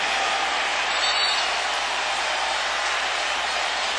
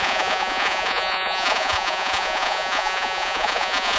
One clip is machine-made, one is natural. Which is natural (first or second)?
first